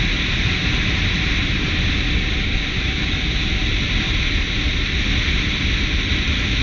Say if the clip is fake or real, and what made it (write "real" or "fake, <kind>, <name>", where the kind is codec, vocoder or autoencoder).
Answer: real